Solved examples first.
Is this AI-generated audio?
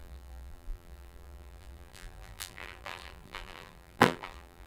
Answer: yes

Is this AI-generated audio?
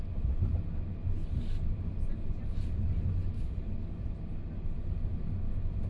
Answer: no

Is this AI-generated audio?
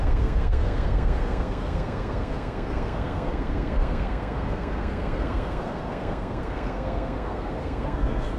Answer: yes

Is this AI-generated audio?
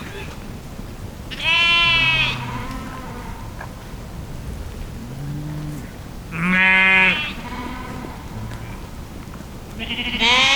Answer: no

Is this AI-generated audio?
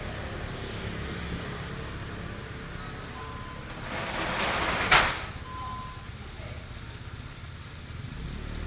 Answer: no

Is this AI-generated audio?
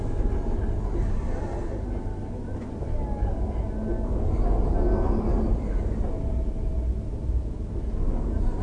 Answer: no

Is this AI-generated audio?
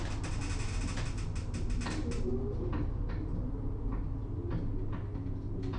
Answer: no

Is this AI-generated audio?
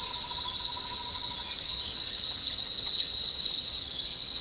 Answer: yes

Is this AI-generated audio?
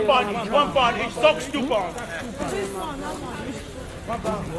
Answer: no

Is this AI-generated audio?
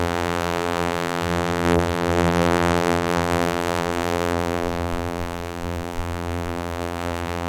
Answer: yes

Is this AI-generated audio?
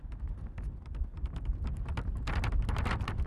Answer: no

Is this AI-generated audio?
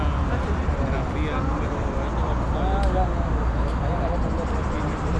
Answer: no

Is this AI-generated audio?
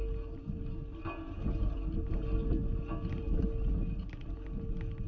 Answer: no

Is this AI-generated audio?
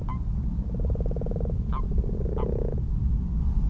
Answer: no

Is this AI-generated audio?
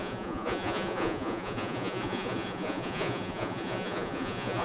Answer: yes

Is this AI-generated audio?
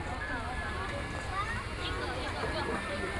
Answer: no